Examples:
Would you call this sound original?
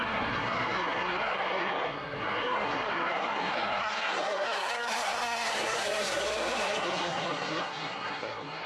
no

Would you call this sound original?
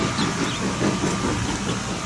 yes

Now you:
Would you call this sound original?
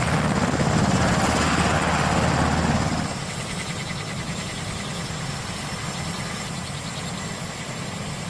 yes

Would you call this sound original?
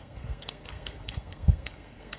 no